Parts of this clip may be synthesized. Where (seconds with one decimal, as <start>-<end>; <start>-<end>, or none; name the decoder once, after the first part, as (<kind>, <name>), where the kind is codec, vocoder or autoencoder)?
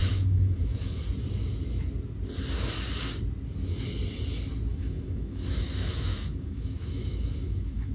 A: 0.0-1.0 (autoencoder, DAC-VAE); 4.7-7.9